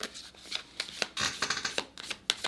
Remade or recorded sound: recorded